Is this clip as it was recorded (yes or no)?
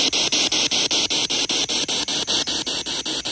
yes